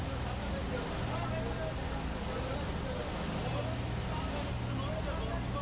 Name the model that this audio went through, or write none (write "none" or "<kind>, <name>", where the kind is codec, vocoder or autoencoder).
none